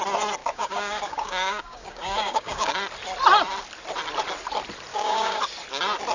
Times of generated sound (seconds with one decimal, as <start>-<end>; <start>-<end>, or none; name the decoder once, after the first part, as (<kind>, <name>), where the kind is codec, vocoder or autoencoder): 0.4-2.7 (codec, DAC); 4.9-5.4